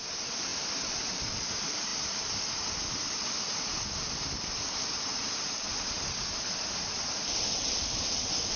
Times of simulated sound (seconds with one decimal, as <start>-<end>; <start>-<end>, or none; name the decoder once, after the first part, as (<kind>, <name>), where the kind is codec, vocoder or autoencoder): none